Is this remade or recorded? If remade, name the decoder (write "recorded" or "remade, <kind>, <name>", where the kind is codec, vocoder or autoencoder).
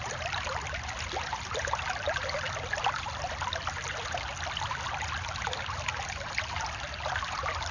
recorded